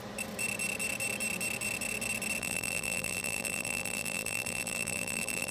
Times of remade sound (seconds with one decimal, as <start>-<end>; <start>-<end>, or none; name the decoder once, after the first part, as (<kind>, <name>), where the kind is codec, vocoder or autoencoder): 2.4-5.5 (vocoder, BigVGAN v2)